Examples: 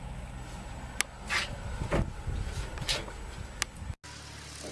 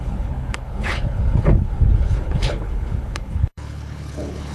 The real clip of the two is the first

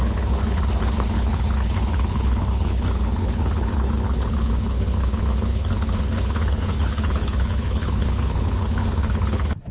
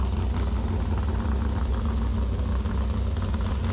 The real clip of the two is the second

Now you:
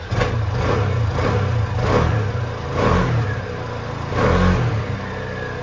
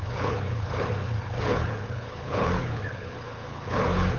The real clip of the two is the first